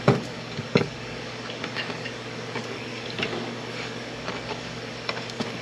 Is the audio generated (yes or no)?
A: yes